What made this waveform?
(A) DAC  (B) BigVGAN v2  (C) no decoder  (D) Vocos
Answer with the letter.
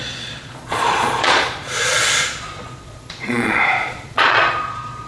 D